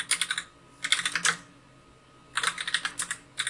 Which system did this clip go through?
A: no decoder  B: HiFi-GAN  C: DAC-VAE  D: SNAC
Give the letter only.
A